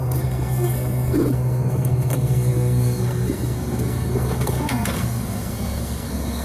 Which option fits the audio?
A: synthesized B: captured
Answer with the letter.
A